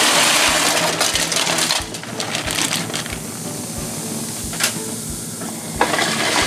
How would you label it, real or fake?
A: real